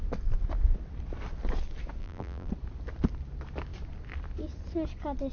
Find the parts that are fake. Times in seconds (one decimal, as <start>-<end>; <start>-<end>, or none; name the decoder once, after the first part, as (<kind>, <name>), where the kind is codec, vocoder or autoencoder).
2.0-2.5 (vocoder, BigVGAN v2)